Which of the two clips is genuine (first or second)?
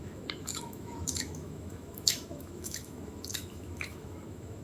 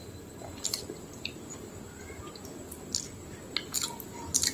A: second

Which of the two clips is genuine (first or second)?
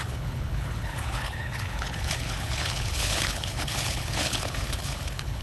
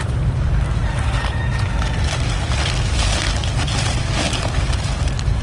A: second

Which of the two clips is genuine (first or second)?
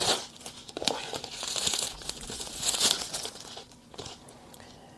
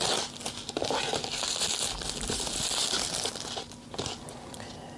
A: second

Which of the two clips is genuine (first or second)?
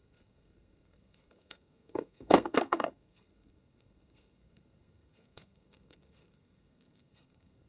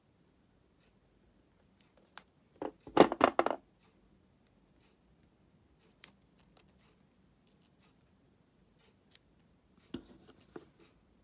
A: second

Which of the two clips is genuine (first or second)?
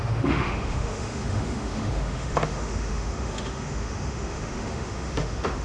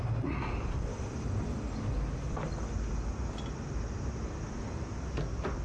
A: second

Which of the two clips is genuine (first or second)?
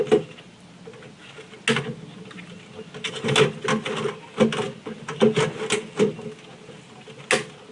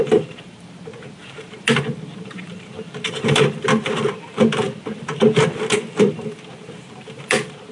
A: first